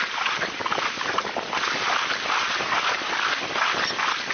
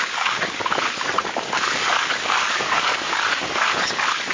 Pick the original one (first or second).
first